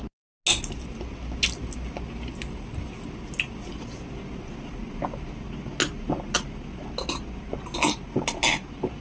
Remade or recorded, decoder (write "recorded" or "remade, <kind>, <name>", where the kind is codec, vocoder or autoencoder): recorded